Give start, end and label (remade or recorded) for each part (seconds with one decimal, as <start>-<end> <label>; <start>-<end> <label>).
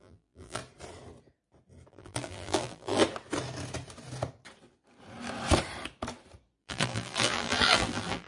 0.0-0.6 remade; 0.6-1.9 recorded; 1.9-3.0 remade; 3.0-6.6 recorded; 6.6-8.3 remade